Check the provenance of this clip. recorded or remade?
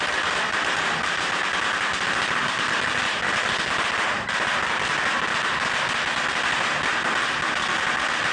recorded